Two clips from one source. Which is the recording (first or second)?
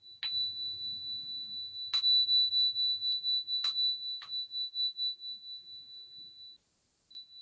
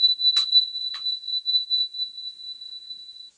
first